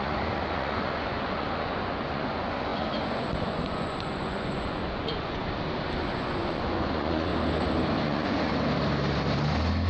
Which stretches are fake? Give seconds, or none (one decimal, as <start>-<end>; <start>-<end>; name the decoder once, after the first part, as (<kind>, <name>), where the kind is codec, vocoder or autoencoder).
0.0-5.4 (vocoder, Vocos); 6.1-7.3; 8.0-8.5